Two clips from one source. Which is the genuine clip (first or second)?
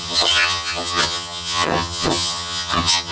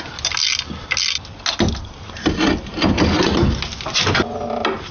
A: second